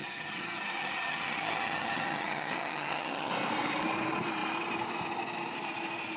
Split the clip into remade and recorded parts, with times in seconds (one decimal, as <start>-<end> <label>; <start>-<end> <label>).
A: 0.0-3.3 remade; 3.3-6.2 recorded